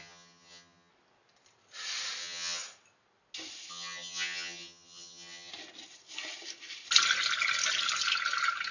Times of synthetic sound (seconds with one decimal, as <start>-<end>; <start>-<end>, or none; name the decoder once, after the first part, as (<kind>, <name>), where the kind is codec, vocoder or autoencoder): 0.0-0.9 (vocoder, HiFi-GAN); 2.2-2.6; 3.7-5.5